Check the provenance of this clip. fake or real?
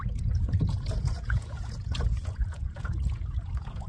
fake